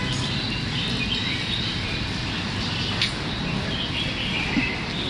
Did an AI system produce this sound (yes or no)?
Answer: no